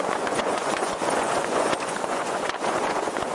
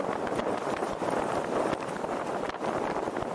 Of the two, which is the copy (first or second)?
first